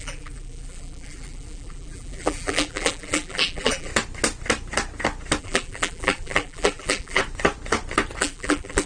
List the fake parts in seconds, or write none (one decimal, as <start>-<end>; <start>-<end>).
0.0-3.9; 5.4-7.2; 8.2-8.9